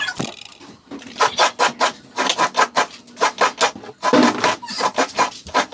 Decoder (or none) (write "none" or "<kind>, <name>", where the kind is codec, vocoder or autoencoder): none